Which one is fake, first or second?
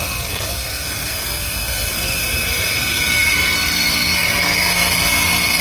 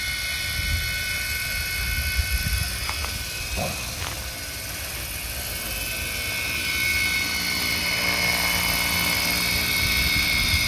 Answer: first